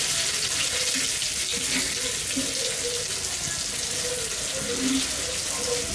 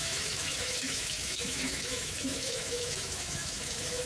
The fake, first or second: second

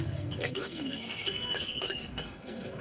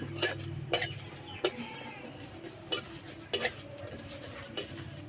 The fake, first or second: first